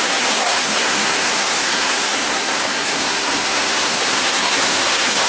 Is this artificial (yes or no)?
yes